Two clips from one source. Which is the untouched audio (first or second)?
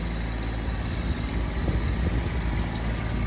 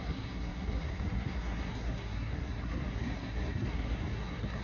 first